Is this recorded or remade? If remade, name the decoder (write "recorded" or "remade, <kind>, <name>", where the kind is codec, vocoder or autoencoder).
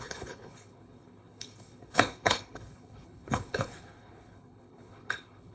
remade, codec, HILCodec